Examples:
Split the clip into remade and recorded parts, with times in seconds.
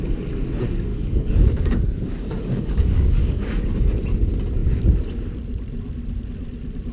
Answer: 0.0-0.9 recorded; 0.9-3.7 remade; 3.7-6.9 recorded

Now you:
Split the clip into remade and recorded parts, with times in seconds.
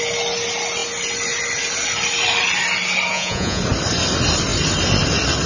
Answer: 0.0-3.1 recorded; 3.1-3.6 remade; 3.6-5.5 recorded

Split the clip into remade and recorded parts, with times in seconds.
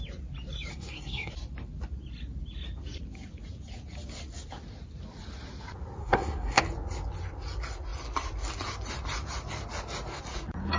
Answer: 0.0-0.7 recorded; 0.7-1.3 remade; 1.3-6.0 recorded; 6.0-6.6 remade; 6.6-10.8 recorded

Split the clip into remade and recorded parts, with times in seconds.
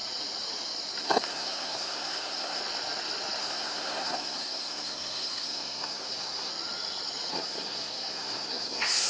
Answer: 0.0-1.0 recorded; 1.0-2.6 remade; 2.6-3.4 recorded; 3.4-6.5 remade; 6.5-7.3 recorded; 7.3-9.1 remade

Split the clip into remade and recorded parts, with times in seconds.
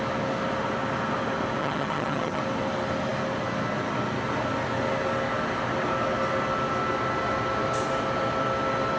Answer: 0.0-1.6 recorded; 1.6-2.4 remade; 2.4-9.0 recorded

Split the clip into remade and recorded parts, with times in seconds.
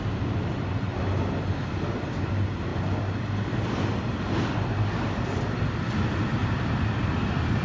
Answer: 0.0-7.6 recorded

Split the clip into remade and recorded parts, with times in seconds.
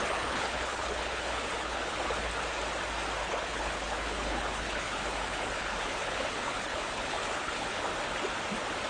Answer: 0.0-2.3 remade; 2.3-3.2 recorded; 3.2-7.9 remade; 7.9-8.9 recorded